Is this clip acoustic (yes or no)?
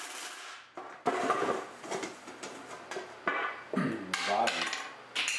yes